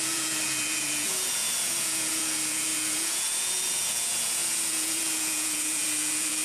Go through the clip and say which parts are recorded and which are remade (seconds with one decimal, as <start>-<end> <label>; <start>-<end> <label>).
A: 0.0-6.4 remade

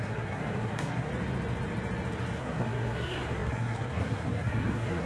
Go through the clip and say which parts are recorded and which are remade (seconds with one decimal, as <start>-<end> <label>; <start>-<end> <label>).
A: 0.0-1.1 remade; 1.1-2.4 recorded; 2.4-5.1 remade